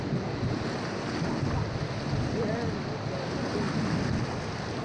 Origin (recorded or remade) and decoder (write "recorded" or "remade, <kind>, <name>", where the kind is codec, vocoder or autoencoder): recorded